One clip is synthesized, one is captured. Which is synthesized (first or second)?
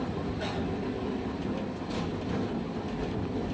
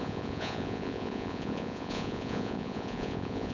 second